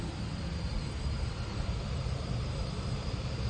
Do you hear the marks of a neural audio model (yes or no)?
yes